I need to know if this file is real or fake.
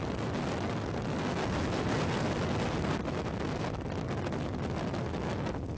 real